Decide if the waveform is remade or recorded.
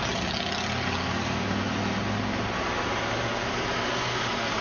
recorded